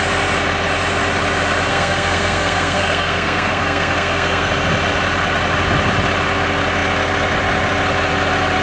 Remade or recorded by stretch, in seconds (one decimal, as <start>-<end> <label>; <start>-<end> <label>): 0.0-1.7 recorded; 1.7-4.5 remade; 4.5-8.6 recorded